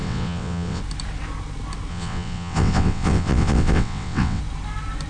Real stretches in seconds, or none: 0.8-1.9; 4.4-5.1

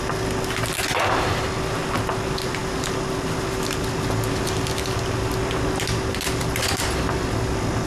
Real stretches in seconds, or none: 0.0-7.9